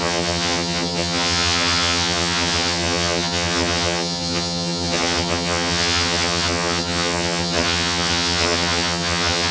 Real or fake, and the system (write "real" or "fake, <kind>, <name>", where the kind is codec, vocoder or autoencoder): fake, vocoder, HiFi-GAN